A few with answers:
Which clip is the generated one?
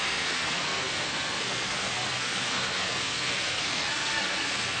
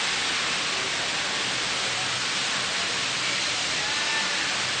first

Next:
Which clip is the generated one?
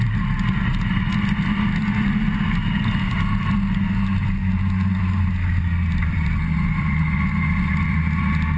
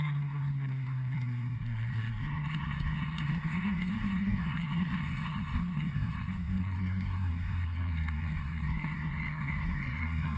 second